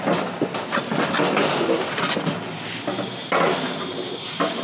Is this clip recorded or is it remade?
recorded